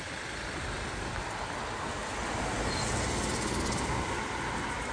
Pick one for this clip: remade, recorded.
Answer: recorded